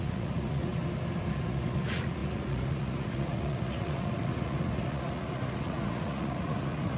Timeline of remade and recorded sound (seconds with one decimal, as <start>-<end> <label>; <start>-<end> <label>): 0.0-0.8 remade; 0.8-1.3 recorded; 1.3-7.0 remade